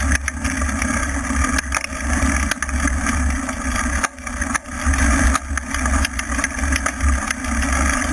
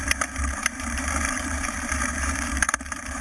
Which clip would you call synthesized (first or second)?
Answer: second